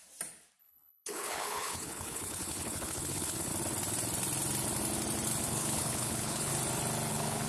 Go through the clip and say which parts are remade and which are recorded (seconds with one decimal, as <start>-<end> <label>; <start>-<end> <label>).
0.0-0.6 recorded; 0.6-3.5 remade; 3.5-5.5 recorded; 5.5-6.5 remade; 6.5-7.1 recorded; 7.1-7.5 remade